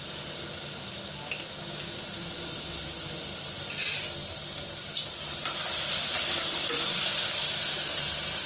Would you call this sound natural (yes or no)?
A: yes